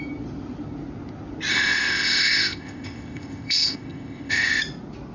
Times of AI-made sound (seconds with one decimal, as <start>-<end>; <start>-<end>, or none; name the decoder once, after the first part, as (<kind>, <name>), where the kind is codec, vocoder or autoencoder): 1.5-4.6 (codec, ZipCodec)